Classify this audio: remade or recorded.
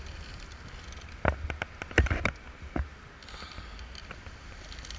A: recorded